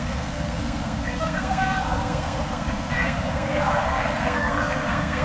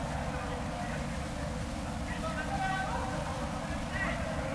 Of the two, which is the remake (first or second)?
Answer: first